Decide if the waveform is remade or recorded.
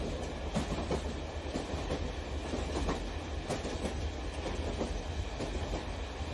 recorded